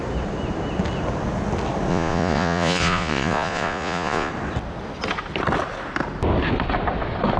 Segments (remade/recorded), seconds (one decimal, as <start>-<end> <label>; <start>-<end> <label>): 0.0-1.9 recorded; 1.9-4.3 remade; 4.3-7.4 recorded